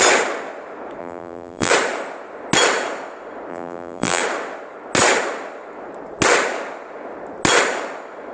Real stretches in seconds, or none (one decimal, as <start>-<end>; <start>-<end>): 0.0-1.0; 1.7-3.5; 4.2-8.3